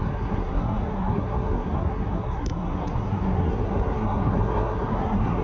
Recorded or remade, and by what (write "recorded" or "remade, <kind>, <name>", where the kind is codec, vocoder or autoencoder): remade, codec, SNAC